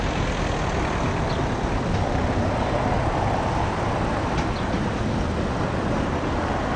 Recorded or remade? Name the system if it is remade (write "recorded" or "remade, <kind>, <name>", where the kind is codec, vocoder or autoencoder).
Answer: recorded